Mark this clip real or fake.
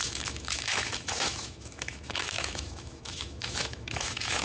fake